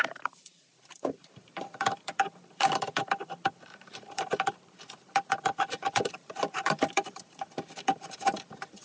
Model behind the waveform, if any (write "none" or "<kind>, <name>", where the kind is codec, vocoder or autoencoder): vocoder, BigVGAN v2